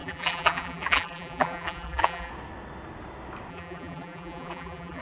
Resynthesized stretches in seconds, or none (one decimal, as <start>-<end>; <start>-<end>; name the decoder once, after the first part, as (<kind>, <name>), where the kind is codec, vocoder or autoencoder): 0.0-2.3 (vocoder, BigVGAN v2); 3.5-5.0